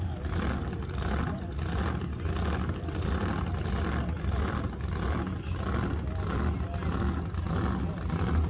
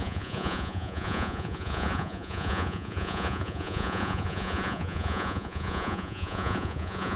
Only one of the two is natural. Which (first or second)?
first